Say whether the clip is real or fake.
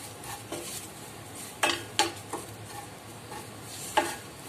real